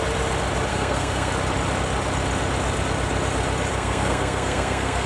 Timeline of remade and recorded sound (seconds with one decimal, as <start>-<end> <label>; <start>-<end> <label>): 0.0-0.7 recorded; 0.7-1.3 remade; 1.3-3.7 recorded; 3.7-5.1 remade